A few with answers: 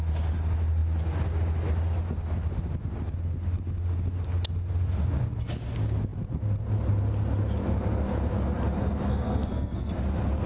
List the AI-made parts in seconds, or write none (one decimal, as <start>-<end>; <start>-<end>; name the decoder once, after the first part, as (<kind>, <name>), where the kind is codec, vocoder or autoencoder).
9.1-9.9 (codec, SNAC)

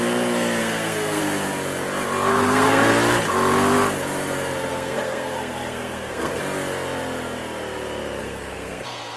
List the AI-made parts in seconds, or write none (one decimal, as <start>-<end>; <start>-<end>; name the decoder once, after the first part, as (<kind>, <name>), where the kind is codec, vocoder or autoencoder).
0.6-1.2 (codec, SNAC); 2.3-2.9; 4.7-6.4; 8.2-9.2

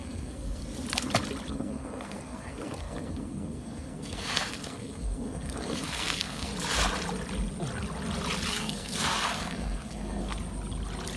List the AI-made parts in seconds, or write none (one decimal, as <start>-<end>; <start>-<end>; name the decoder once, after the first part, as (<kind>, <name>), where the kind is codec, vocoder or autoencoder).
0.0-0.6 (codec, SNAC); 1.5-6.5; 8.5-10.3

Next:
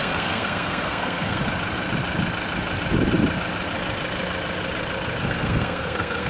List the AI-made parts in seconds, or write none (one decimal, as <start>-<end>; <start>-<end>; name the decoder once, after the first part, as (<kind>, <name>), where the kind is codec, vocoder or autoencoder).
0.0-1.4 (codec, SNAC); 5.2-6.3

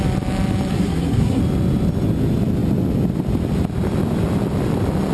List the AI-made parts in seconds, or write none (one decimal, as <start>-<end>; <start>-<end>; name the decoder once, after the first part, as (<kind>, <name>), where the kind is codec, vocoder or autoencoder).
0.7-1.4 (codec, SNAC)

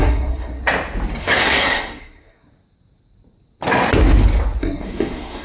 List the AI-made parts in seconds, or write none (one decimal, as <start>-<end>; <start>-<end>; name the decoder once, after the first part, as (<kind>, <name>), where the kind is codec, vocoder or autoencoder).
0.0-0.6 (codec, SNAC); 1.2-2.5; 4.6-5.4

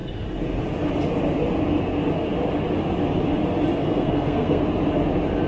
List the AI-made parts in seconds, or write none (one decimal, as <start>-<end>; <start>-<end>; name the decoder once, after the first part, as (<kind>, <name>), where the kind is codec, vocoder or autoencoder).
3.8-4.6 (codec, SNAC)

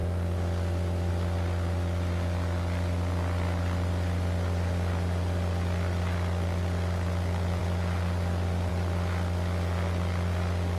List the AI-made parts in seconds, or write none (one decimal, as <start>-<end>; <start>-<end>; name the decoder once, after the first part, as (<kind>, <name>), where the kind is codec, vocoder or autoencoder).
none